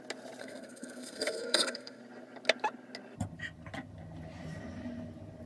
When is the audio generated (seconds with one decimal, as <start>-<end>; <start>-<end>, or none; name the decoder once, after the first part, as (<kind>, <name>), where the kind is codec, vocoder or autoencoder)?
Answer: 0.4-2.0 (codec, SNAC)